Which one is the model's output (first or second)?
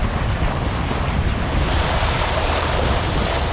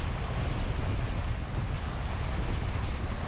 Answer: first